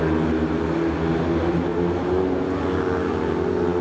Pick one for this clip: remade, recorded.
recorded